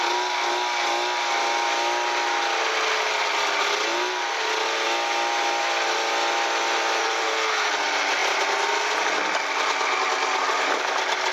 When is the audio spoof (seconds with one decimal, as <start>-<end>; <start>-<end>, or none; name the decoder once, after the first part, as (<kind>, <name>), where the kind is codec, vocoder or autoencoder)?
7.0-7.7 (codec, SNAC)